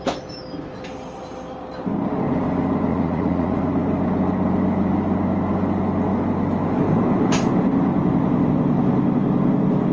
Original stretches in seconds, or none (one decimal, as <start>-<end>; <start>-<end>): 0.0-2.9; 3.6-9.9